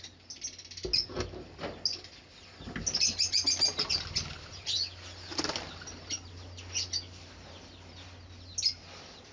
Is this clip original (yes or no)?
yes